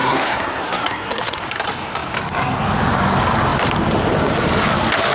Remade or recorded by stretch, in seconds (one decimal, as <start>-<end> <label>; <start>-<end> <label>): 0.0-1.4 remade; 1.4-5.1 recorded

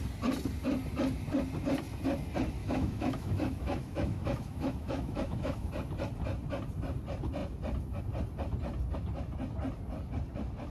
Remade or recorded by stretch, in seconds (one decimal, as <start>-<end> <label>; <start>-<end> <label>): 0.0-2.6 recorded; 2.6-5.7 remade; 5.7-10.7 recorded

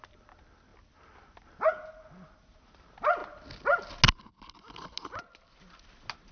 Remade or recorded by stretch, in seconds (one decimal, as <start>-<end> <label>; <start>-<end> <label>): 0.0-6.3 recorded

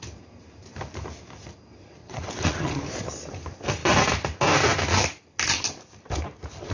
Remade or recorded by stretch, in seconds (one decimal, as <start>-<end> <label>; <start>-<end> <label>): 0.0-2.0 recorded; 2.0-2.8 remade; 2.8-6.7 recorded